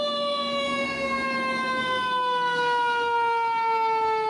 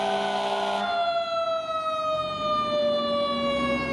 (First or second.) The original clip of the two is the second